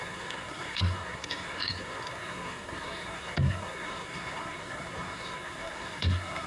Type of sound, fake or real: fake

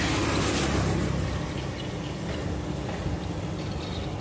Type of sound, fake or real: real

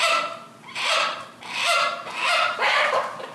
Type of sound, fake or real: real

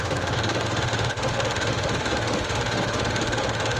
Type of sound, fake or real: fake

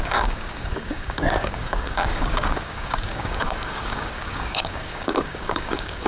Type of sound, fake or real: fake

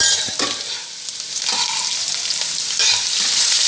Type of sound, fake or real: real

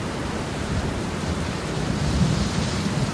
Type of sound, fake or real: fake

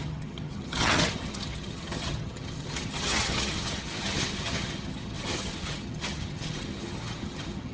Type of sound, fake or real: fake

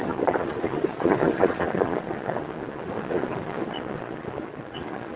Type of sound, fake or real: fake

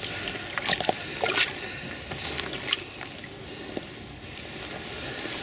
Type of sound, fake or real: real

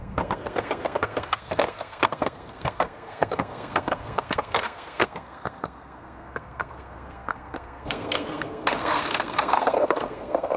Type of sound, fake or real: fake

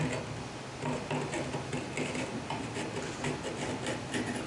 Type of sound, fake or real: real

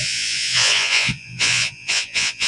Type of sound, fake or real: fake